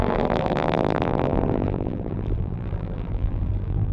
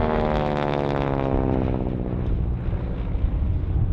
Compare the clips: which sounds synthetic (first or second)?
first